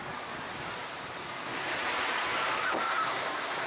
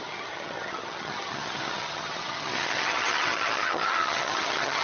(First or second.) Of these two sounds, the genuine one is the first